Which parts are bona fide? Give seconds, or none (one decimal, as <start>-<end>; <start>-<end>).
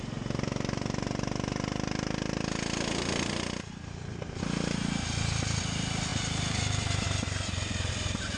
0.0-8.4